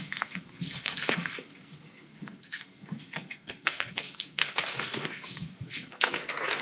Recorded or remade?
remade